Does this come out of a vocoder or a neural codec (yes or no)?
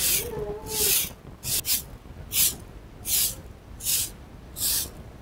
no